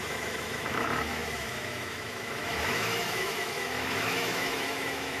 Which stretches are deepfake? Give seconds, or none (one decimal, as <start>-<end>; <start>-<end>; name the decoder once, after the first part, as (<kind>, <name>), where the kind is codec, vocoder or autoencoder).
0.0-5.2 (autoencoder, DAC-VAE)